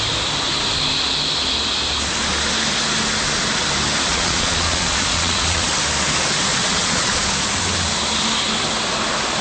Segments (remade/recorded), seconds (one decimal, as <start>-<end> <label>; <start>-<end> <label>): 0.0-4.1 recorded; 4.1-5.7 remade; 5.7-6.5 recorded; 6.5-7.2 remade; 7.2-9.4 recorded

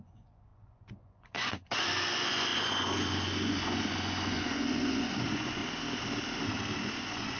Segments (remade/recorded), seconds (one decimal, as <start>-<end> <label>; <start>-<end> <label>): 0.0-5.6 remade; 5.6-6.8 recorded; 6.8-7.4 remade

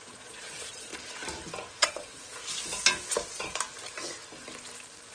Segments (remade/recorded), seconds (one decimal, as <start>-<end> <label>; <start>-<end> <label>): 0.0-0.9 remade; 0.9-1.8 recorded; 1.8-2.4 remade; 2.4-5.1 recorded

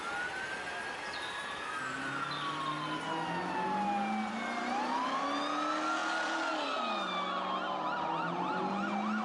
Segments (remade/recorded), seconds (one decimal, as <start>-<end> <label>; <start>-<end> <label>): 0.0-9.2 recorded

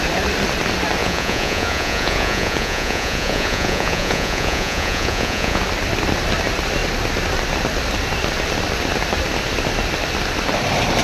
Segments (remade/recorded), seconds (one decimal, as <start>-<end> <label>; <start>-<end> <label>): 0.0-1.0 recorded; 1.0-5.6 remade; 5.6-11.0 recorded

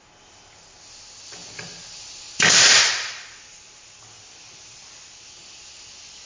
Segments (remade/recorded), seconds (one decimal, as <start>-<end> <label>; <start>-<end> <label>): 0.0-6.3 recorded

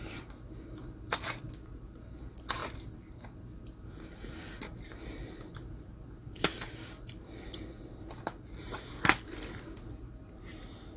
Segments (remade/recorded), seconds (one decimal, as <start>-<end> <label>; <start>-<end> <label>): 0.0-11.0 recorded

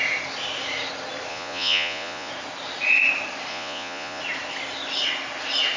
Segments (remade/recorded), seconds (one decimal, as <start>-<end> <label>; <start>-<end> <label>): 0.0-1.3 recorded; 1.3-2.3 remade; 2.3-3.5 recorded; 3.5-4.2 remade; 4.2-5.8 recorded